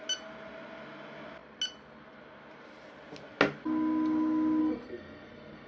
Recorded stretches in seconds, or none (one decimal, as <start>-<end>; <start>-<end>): 0.0-4.6